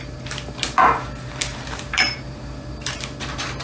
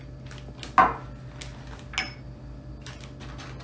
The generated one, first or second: first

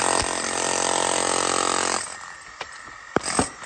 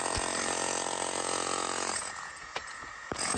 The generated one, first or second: second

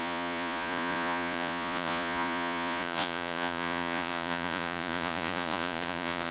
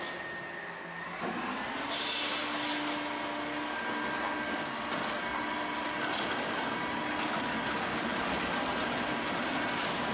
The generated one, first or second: first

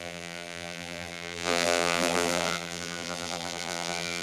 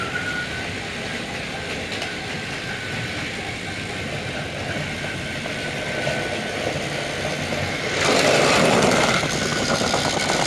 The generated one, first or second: first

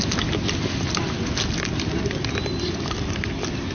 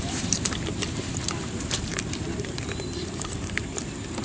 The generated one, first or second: second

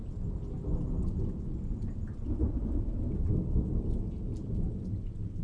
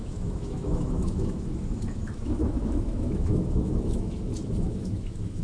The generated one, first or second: second